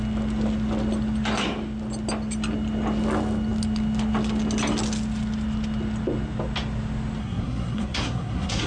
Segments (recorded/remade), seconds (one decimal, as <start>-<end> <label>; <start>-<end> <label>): 0.0-7.2 recorded; 7.2-8.7 remade